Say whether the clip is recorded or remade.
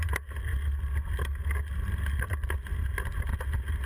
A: recorded